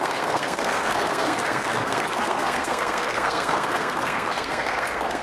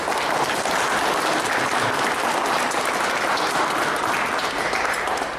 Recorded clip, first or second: second